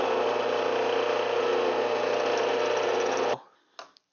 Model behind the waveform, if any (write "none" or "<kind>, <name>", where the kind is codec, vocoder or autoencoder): none